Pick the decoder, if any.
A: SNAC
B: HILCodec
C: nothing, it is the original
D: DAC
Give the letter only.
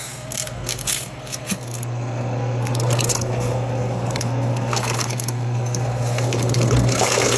A